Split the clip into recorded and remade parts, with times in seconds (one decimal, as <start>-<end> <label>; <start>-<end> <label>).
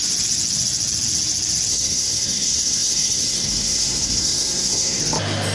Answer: 0.0-1.7 recorded; 1.7-5.0 remade; 5.0-5.5 recorded